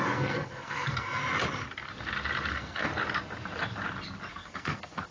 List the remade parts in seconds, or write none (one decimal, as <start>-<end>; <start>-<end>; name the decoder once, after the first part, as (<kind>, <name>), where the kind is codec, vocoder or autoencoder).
0.0-1.2 (codec, SNAC); 2.5-2.9; 4.3-5.1